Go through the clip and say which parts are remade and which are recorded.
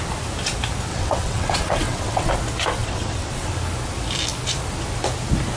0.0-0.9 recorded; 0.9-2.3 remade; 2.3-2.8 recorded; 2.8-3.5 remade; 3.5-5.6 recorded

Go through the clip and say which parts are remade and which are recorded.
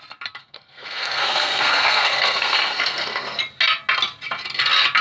0.0-0.4 recorded; 0.4-3.4 remade; 3.4-5.0 recorded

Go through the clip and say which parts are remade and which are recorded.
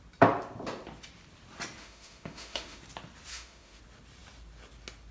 0.0-1.8 recorded; 1.8-2.8 remade; 2.8-3.3 recorded; 3.3-3.8 remade; 3.8-5.1 recorded